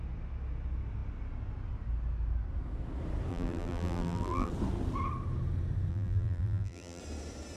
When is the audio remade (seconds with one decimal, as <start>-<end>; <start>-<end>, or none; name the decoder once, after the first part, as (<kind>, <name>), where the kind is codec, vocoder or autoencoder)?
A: 3.3-4.5 (vocoder, BigVGAN v2); 5.9-7.0